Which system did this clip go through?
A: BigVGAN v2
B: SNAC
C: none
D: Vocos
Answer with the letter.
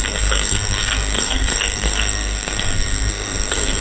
B